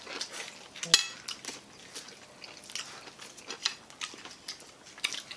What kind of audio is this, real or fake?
real